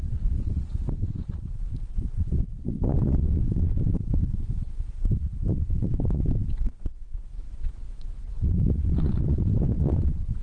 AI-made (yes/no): yes